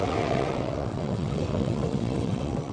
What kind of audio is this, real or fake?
fake